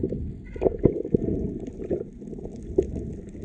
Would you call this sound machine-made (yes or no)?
no